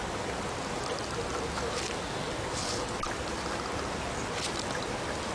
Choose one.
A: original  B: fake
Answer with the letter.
A